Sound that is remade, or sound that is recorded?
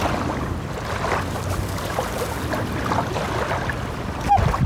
recorded